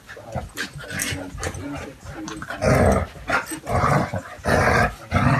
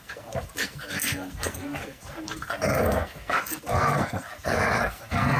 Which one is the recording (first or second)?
first